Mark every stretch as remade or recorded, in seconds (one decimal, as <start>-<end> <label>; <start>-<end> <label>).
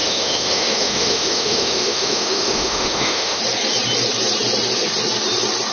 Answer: 0.0-3.4 remade; 3.4-5.7 recorded